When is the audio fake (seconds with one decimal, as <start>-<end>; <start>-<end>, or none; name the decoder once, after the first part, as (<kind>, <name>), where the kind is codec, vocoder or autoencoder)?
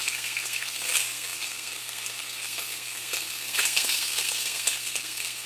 0.0-5.5 (codec, SNAC)